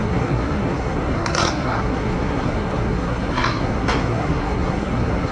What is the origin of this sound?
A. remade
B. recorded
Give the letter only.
A